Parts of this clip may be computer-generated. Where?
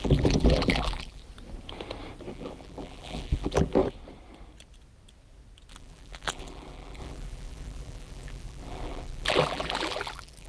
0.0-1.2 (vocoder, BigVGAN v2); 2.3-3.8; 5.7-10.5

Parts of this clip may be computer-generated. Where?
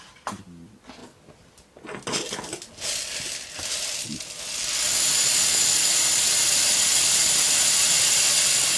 6.7-7.2 (vocoder, BigVGAN v2)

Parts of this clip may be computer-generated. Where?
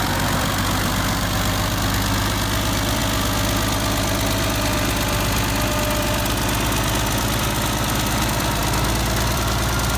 0.0-3.0 (vocoder, BigVGAN v2); 7.2-8.6; 9.3-10.0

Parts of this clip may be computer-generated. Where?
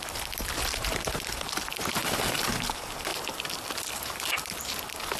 2.0-2.5 (vocoder, BigVGAN v2); 3.1-4.3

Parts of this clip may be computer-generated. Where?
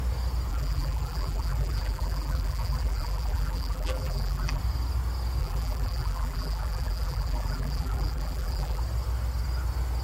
0.5-4.6 (vocoder, BigVGAN v2); 5.4-8.8